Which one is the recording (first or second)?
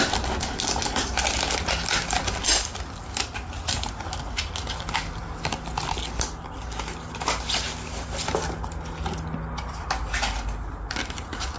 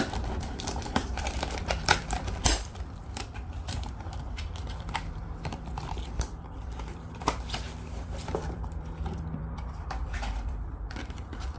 first